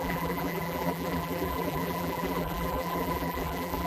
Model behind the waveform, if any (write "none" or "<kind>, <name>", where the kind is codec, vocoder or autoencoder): vocoder, BigVGAN v2